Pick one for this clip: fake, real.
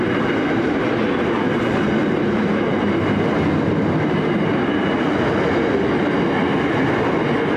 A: real